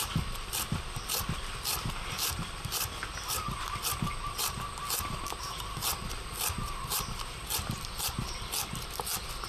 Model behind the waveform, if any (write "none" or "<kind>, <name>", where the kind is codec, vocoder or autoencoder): none